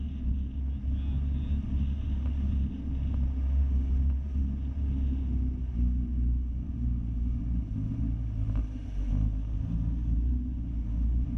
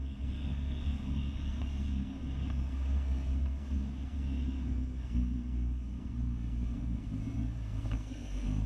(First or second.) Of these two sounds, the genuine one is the first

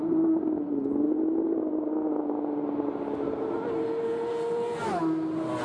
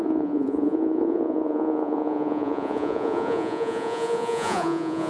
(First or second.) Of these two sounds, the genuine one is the first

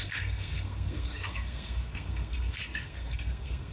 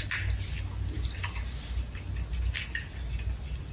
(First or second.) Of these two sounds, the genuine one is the second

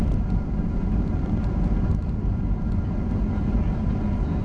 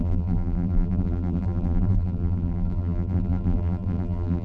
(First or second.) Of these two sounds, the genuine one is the first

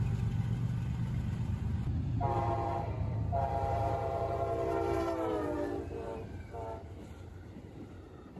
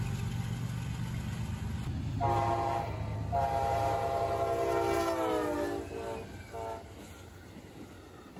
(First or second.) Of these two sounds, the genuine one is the second